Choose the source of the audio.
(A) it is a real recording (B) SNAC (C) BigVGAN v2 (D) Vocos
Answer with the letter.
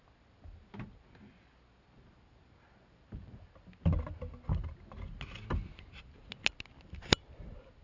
A